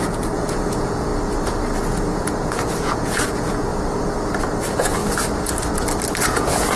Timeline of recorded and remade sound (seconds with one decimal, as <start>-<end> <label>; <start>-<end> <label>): 0.0-1.1 remade; 1.1-1.8 recorded; 1.8-3.7 remade; 3.7-4.6 recorded; 4.6-5.0 remade; 5.0-6.2 recorded; 6.2-6.8 remade